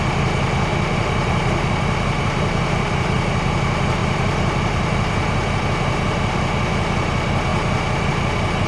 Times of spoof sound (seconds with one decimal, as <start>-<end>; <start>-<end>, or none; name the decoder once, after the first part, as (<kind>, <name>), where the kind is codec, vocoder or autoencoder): 0.7-3.6 (vocoder, BigVGAN v2); 4.0-5.6